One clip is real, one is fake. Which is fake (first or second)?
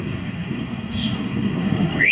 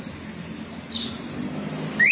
first